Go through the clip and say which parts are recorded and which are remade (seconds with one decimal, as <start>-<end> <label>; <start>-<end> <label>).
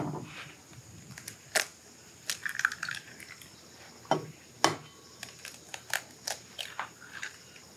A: 0.0-7.8 recorded